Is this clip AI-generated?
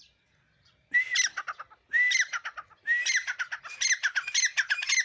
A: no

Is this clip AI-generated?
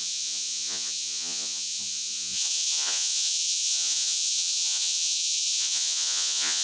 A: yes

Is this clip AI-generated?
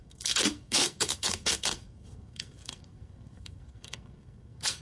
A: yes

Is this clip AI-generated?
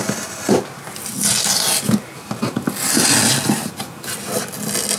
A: no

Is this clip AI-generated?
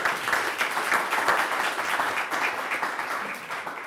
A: no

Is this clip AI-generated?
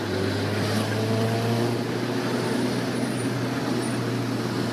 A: no